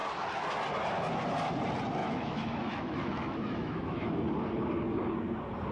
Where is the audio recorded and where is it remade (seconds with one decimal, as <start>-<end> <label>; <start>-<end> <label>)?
0.0-2.0 recorded; 2.0-4.2 remade; 4.2-5.7 recorded